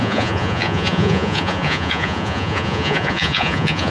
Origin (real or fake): fake